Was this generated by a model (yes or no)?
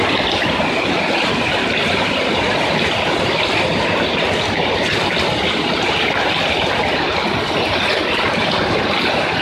no